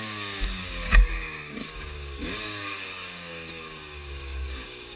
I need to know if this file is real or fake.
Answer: fake